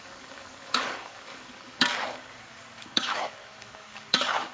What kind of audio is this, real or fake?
fake